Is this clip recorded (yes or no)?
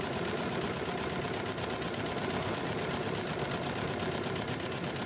yes